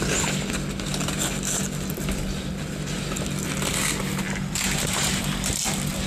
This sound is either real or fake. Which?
real